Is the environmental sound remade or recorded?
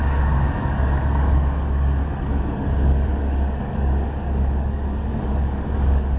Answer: remade